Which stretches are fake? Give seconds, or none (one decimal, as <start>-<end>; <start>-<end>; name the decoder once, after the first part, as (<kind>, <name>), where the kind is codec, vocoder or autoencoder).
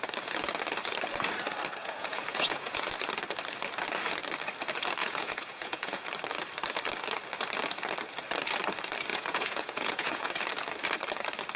1.8-2.8 (vocoder, Vocos); 5.0-6.1; 9.1-10.3